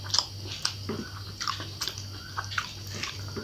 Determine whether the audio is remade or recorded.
recorded